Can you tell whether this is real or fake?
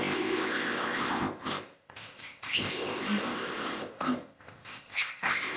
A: fake